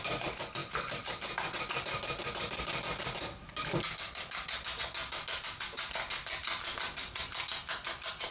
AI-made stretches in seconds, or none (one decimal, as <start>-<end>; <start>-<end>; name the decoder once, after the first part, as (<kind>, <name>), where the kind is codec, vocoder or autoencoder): none